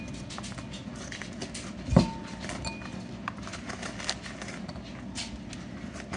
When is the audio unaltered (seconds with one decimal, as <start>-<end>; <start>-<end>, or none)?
0.0-6.2